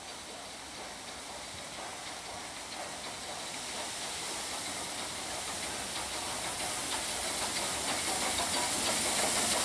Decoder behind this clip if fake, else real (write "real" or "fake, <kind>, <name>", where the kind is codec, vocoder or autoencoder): real